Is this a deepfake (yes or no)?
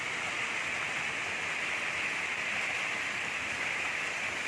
no